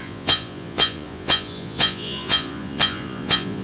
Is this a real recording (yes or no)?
no